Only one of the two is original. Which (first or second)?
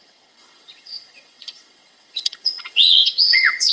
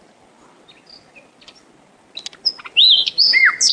second